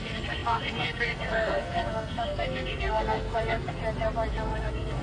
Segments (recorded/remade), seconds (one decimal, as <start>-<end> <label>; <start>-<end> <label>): 0.0-3.8 remade; 3.8-4.3 recorded; 4.3-5.0 remade